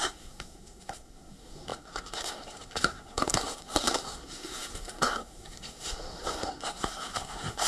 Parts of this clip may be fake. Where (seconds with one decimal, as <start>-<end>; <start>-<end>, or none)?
0.0-7.7